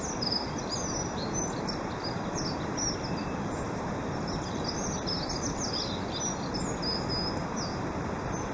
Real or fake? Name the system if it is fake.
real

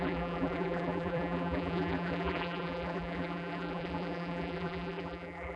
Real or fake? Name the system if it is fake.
fake, vocoder, BigVGAN v2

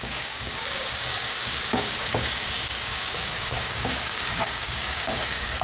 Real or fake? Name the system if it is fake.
fake, codec, DAC